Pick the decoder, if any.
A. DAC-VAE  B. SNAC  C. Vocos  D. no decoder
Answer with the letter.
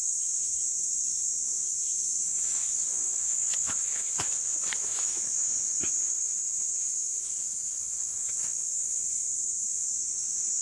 A